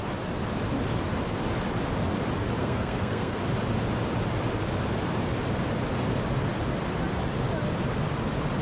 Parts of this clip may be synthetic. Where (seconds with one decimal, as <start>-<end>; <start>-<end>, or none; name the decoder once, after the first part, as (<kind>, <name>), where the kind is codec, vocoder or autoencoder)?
2.6-3.4 (codec, SNAC)